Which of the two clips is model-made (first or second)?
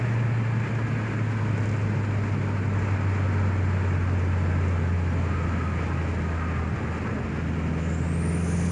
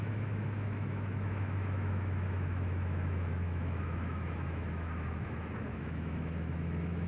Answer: second